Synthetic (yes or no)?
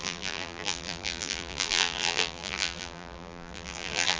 yes